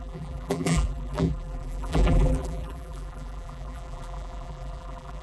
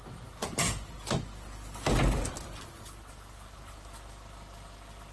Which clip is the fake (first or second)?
first